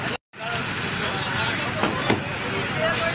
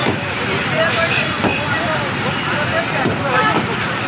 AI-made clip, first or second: second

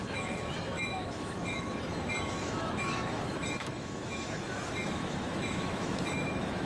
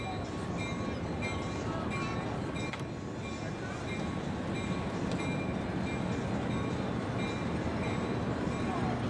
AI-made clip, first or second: first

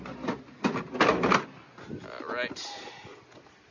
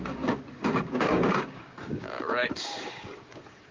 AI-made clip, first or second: second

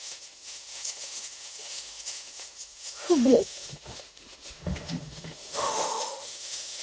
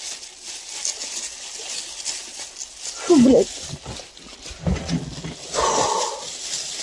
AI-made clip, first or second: first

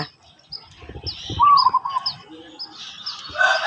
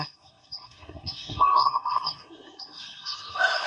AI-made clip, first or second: second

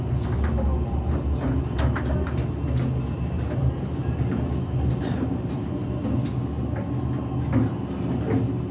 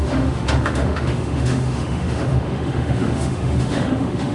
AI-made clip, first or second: second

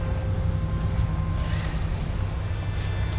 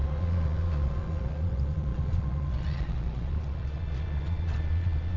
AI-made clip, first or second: second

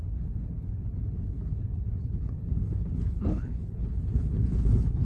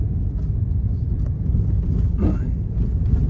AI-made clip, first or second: first